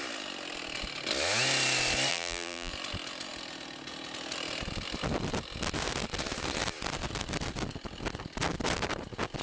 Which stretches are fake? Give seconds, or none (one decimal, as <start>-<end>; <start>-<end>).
2.1-2.7